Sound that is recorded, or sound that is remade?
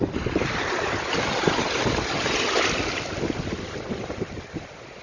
recorded